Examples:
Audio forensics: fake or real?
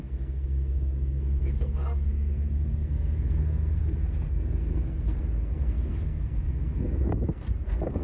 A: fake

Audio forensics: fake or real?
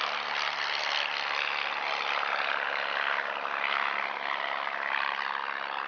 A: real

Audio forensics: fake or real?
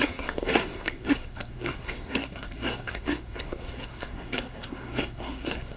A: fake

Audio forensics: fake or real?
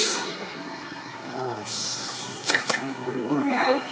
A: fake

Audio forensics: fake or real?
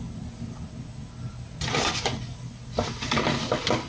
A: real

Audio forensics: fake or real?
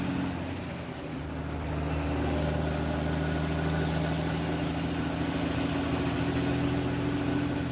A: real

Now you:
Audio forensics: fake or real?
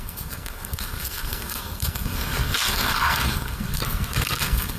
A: fake